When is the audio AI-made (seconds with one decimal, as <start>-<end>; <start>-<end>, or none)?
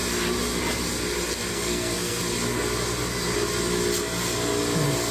1.5-2.2